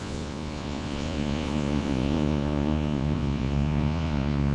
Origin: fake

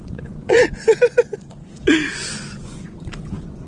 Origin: fake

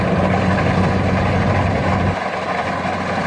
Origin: real